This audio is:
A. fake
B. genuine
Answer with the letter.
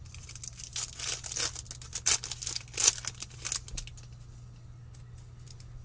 B